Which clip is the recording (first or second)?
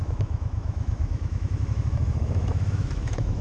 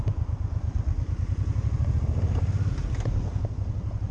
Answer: second